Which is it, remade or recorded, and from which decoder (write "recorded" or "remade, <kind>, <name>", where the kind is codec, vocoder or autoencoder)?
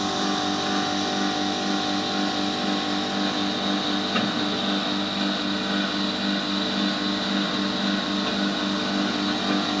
recorded